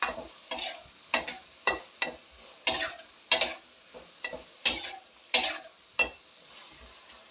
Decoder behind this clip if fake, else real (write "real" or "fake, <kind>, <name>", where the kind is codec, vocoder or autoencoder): real